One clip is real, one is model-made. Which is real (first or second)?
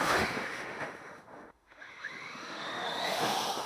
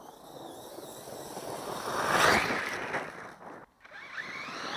second